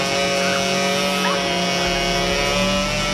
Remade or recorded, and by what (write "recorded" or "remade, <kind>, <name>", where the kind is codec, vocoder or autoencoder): recorded